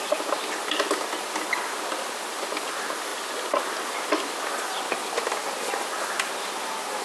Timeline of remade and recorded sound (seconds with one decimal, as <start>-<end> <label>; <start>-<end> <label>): 0.0-7.0 recorded